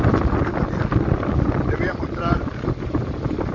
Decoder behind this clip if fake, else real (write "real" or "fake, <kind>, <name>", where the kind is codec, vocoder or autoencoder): real